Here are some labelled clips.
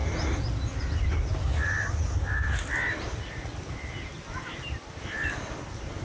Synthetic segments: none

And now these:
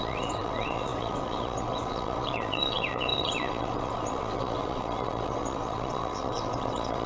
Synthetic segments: 0.0-7.1 (vocoder, WaveNeXt)

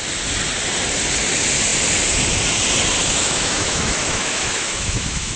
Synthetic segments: 3.0-5.4 (autoencoder, DAC-VAE)